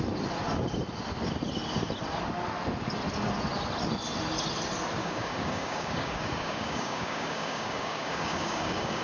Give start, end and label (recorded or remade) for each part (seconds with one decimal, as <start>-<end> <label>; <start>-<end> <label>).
0.0-5.0 recorded; 5.0-9.0 remade